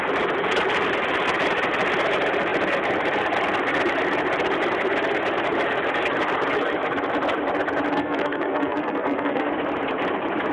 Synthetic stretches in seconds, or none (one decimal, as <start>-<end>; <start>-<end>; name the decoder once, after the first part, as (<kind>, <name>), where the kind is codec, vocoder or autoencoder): 7.9-9.5 (codec, SNAC)